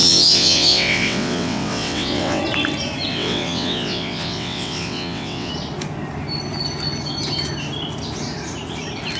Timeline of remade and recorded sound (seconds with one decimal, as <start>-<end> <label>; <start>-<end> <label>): 0.0-2.4 remade; 2.4-3.1 recorded; 3.1-5.5 remade; 5.5-9.2 recorded